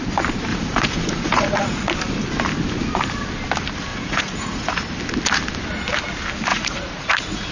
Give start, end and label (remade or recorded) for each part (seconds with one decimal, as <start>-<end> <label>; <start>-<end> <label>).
0.0-0.5 recorded; 0.5-1.9 remade; 1.9-3.9 recorded; 3.9-4.8 remade; 4.8-6.5 recorded; 6.5-7.5 remade